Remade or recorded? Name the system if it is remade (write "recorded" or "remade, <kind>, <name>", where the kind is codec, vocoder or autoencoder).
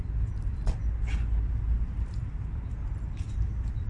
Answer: recorded